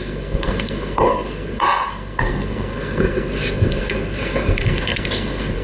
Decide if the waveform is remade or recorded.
remade